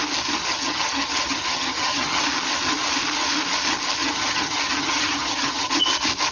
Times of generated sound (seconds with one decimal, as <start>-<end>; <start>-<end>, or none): 0.4-2.2; 4.0-5.7

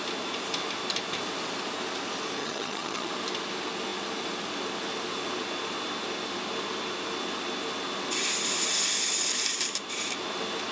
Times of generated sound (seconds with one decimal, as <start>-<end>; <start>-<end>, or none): 2.4-3.1

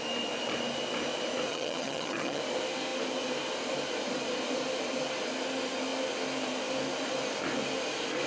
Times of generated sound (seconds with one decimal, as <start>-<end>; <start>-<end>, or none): 1.5-2.4

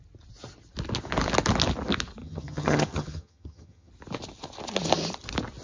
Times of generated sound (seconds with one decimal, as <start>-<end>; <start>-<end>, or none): 2.2-3.9

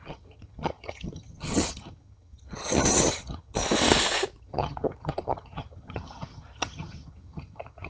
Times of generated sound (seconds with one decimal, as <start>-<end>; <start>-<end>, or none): 0.0-3.6; 4.4-7.9

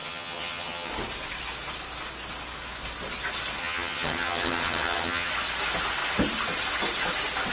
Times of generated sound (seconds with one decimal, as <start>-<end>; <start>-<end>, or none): 0.0-0.9; 3.6-5.3